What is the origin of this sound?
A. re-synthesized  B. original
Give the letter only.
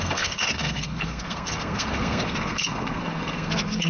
A